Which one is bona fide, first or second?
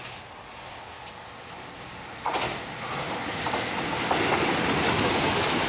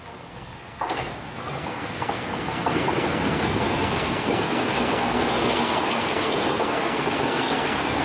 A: first